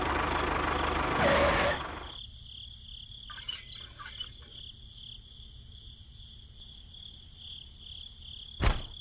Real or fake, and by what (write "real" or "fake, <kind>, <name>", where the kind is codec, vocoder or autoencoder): real